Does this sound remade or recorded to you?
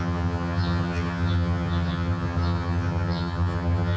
remade